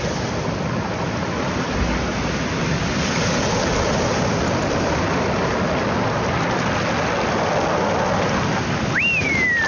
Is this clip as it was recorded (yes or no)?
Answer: yes